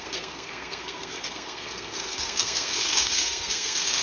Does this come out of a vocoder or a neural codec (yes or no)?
yes